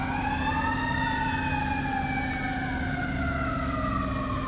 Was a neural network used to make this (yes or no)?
no